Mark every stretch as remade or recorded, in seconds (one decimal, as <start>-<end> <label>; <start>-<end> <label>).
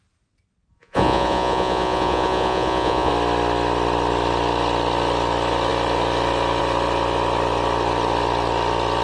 0.0-0.7 recorded; 0.7-3.1 remade; 3.1-9.0 recorded